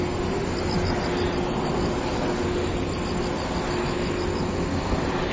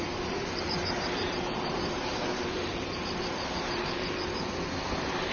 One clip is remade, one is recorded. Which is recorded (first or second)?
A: first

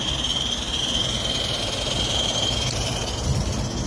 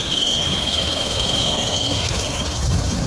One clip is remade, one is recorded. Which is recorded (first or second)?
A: first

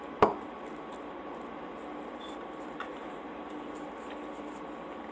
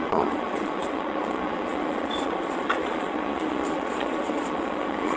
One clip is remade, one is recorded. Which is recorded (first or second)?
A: first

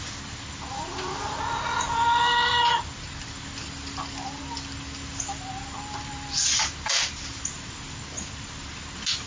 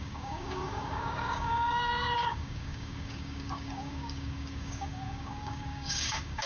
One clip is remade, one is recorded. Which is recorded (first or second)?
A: first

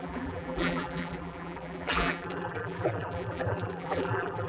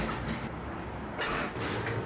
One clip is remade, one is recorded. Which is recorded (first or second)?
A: second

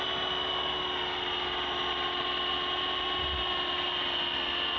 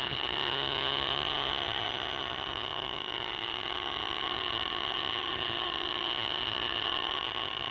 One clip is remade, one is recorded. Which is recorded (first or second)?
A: first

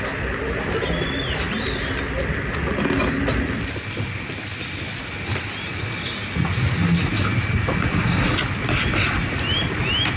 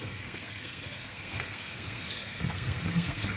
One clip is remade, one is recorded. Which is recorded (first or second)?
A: first